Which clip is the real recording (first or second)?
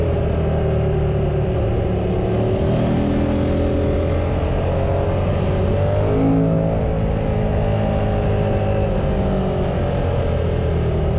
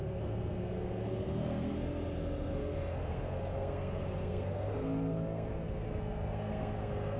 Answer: first